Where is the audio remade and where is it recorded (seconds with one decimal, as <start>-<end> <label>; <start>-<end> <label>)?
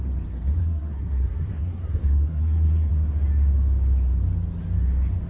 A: 0.0-0.6 recorded; 0.6-2.9 remade; 2.9-5.3 recorded